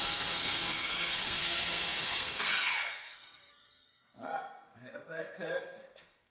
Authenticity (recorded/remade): remade